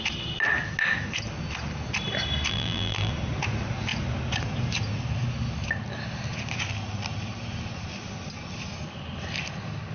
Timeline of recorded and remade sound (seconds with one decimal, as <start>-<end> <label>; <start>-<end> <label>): 0.0-2.5 recorded; 2.5-3.1 remade; 3.1-9.9 recorded